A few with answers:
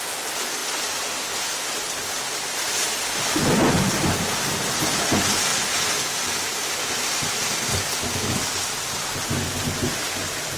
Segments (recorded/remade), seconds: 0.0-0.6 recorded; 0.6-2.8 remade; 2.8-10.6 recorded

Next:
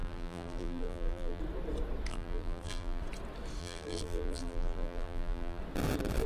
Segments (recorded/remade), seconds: 0.0-1.4 remade; 1.4-2.1 recorded; 2.1-3.0 remade; 3.0-3.6 recorded; 3.6-5.6 remade; 5.6-6.3 recorded

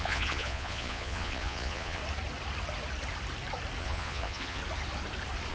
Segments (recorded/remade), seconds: 0.0-2.0 remade; 2.0-3.8 recorded; 3.8-4.6 remade; 4.6-5.5 recorded

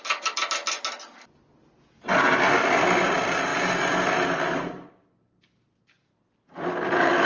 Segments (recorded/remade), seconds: 0.0-7.2 recorded

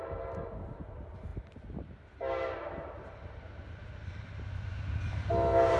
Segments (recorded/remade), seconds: 0.0-5.8 recorded